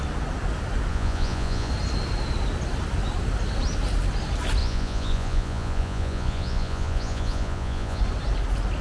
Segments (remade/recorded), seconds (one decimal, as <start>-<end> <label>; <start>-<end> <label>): 0.0-0.9 recorded; 0.9-1.7 remade; 1.7-4.6 recorded; 4.6-8.0 remade; 8.0-8.8 recorded